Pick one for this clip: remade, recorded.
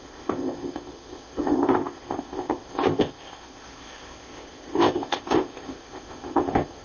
remade